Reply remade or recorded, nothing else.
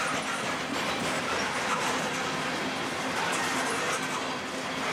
recorded